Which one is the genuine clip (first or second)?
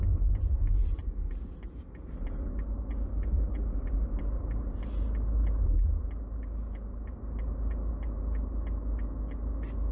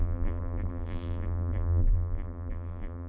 first